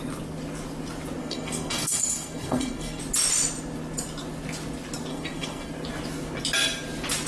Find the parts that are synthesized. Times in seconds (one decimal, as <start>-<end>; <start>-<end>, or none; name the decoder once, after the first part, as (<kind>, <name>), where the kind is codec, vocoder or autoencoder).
1.2-3.0 (codec, SNAC); 5.1-5.7